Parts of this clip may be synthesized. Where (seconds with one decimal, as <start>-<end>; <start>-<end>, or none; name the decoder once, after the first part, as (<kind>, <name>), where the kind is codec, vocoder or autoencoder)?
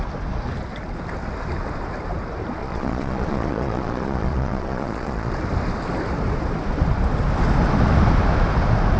2.6-5.3 (vocoder, Vocos)